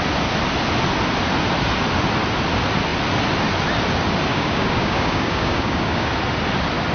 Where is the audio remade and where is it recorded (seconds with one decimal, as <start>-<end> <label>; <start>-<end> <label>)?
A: 0.0-4.3 recorded; 4.3-6.1 remade; 6.1-6.9 recorded

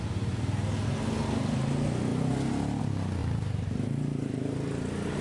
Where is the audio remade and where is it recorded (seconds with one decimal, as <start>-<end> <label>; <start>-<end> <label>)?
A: 0.0-3.2 recorded; 3.2-5.2 remade

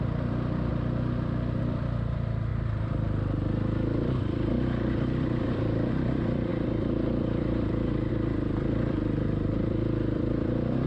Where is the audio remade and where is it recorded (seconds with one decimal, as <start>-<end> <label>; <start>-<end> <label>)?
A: 0.0-0.7 remade; 0.7-1.6 recorded; 1.6-10.9 remade

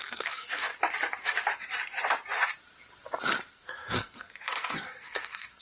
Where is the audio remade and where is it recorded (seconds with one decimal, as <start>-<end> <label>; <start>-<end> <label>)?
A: 0.0-0.7 remade; 0.7-3.5 recorded; 3.5-5.6 remade

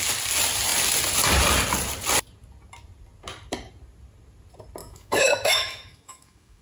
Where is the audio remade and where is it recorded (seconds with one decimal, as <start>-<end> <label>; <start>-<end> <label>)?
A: 0.0-4.8 recorded; 4.8-6.6 remade

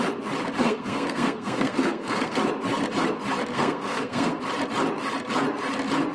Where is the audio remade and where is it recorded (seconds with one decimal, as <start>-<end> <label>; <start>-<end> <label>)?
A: 0.0-0.6 recorded; 0.6-2.4 remade; 2.4-3.5 recorded; 3.5-4.4 remade; 4.4-6.1 recorded

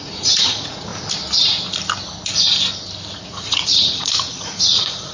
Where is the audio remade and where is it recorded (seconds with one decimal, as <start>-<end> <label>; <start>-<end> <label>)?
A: 0.0-0.9 remade; 0.9-3.1 recorded; 3.1-5.1 remade

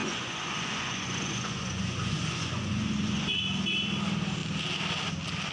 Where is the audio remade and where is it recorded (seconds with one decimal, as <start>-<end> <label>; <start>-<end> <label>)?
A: 0.0-3.3 remade; 3.3-5.5 recorded